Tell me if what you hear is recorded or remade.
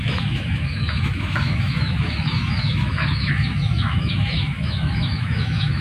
remade